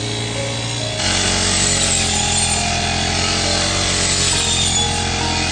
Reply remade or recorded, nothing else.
recorded